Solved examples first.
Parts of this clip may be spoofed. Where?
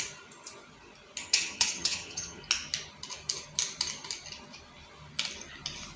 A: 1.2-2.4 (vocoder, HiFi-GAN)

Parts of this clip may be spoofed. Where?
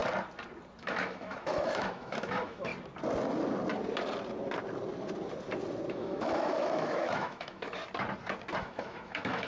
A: 0.8-2.7 (autoencoder, DAC-VAE); 5.9-7.8; 8.6-9.5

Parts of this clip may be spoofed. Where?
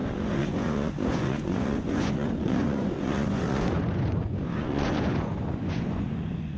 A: 0.0-6.6 (vocoder, Vocos)